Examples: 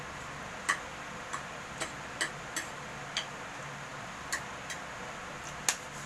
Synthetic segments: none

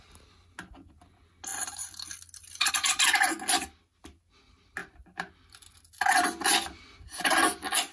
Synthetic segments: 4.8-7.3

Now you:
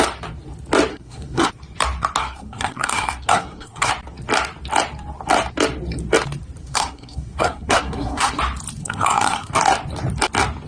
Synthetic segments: 0.9-1.5; 2.2-3.9; 6.6-8.4; 8.8-9.5

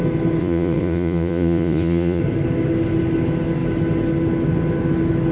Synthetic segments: 0.4-2.2